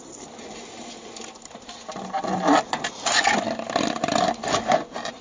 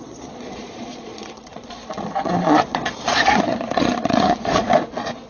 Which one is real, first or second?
first